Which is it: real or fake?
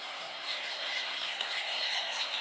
fake